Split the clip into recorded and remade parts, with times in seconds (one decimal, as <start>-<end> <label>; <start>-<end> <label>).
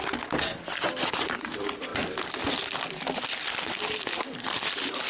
0.0-5.1 remade